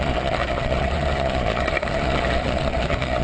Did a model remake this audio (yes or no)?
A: yes